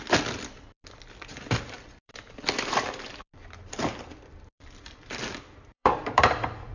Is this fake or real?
fake